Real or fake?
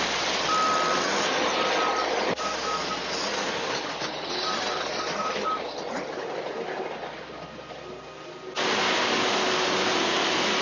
real